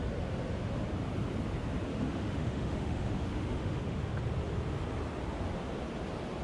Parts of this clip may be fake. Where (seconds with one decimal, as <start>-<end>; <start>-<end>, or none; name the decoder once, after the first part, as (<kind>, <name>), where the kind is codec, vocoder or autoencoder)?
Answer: 1.9-4.0 (autoencoder, DAC-VAE)